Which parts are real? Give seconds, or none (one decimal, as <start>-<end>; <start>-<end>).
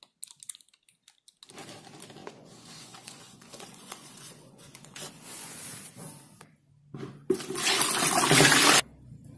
0.0-2.2; 5.6-9.4